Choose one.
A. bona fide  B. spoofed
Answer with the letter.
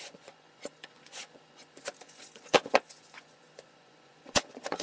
B